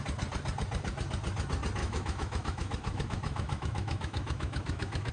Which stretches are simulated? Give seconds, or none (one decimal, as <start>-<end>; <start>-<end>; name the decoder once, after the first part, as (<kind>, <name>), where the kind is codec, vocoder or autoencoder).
1.8-5.1 (autoencoder, DAC-VAE)